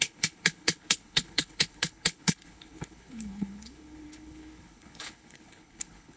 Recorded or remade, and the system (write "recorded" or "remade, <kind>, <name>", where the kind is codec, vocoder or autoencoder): remade, codec, HILCodec